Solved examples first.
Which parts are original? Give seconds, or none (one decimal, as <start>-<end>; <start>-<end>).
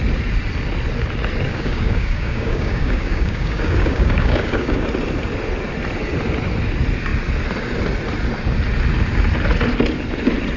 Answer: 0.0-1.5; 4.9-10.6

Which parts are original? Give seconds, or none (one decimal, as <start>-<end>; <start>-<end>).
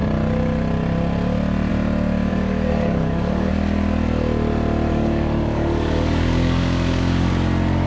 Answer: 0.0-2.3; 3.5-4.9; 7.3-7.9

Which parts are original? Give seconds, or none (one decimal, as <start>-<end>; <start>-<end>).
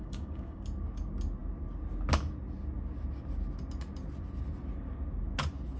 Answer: 0.6-5.8